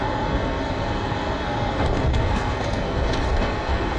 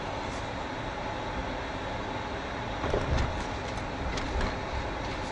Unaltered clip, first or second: second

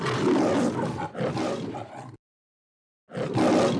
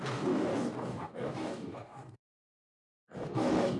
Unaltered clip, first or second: first